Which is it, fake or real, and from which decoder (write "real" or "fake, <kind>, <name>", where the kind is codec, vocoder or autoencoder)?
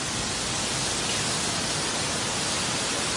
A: real